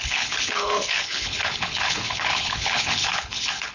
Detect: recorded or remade remade